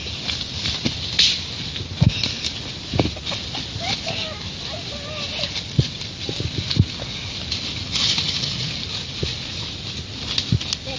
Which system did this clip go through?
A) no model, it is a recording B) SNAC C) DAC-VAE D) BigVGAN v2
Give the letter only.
A